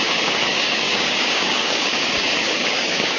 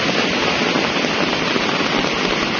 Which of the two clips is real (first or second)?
second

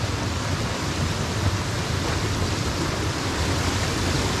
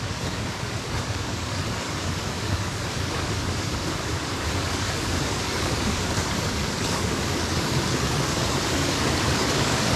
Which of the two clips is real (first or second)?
first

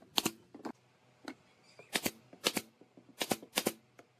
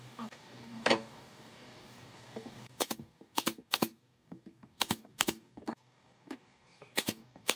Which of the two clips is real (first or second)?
first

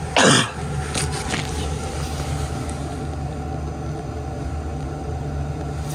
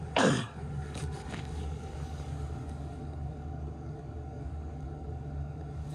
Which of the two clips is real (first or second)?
first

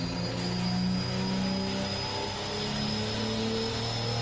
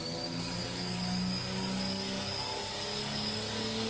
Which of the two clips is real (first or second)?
first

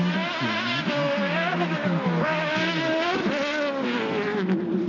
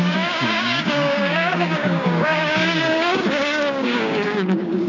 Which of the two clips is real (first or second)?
first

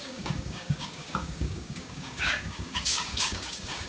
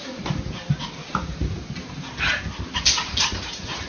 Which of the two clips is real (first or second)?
second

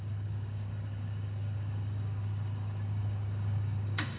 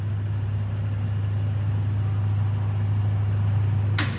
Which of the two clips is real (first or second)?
second